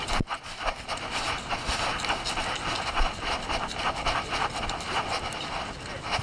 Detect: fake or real real